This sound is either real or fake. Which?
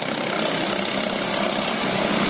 real